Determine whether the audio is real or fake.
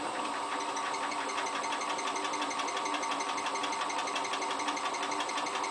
real